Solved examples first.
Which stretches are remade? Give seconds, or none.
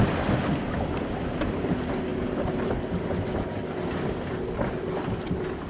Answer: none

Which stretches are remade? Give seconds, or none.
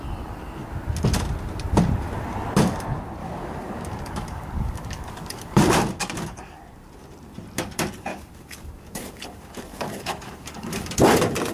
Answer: 3.2-5.6 (codec, DAC); 6.0-6.6; 8.1-10.9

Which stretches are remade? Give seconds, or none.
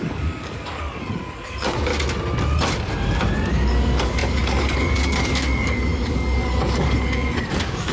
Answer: 0.0-1.9 (codec, DAC); 3.5-7.9